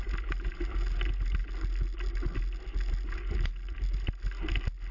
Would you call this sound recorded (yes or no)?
yes